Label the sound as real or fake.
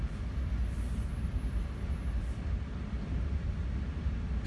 real